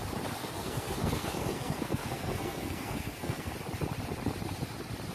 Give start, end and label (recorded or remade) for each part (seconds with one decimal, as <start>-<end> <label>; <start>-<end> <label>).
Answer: 0.0-0.4 recorded; 0.4-3.5 remade; 3.5-5.1 recorded